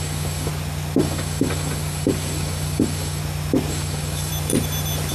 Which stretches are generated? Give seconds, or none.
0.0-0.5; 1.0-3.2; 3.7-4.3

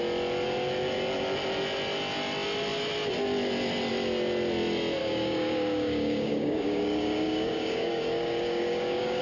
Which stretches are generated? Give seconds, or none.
5.0-9.2

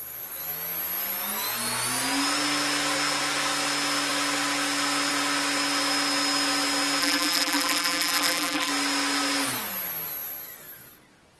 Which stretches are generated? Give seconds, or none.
7.0-8.7